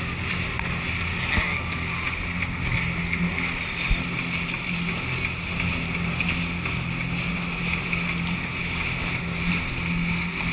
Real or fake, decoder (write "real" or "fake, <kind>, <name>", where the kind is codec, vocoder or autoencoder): real